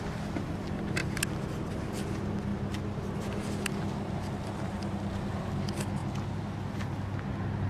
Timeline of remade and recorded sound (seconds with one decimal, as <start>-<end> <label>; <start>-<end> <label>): 0.0-7.7 recorded